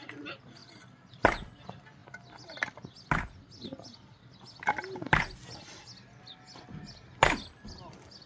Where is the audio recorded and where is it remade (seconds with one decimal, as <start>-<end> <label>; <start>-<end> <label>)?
0.0-8.3 recorded